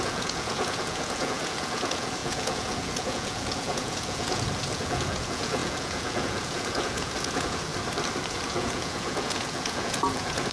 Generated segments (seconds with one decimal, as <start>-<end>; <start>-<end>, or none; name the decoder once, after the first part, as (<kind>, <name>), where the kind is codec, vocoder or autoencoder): 0.0-7.7 (vocoder, Vocos); 8.3-10.5